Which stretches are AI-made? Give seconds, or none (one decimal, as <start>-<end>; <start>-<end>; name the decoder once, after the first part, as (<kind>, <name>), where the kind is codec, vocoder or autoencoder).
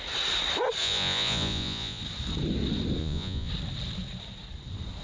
0.8-2.0 (vocoder, Vocos); 3.0-3.5